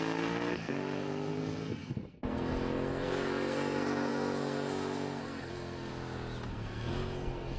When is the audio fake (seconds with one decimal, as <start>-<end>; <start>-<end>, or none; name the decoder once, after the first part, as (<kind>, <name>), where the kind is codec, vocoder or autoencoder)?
0.0-5.9 (codec, SNAC); 6.5-7.6